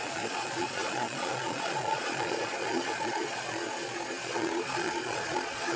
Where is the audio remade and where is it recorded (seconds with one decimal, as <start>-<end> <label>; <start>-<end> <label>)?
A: 0.0-5.8 remade